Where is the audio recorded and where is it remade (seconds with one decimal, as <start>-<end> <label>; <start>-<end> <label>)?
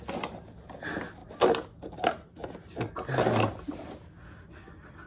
0.0-5.1 recorded